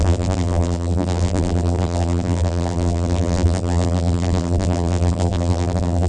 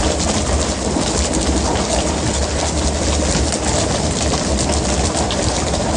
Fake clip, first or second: first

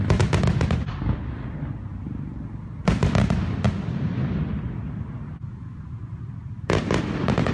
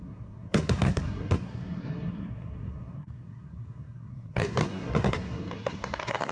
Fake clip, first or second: second